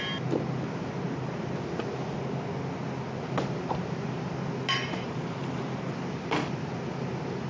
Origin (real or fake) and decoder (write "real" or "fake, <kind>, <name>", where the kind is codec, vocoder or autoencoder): real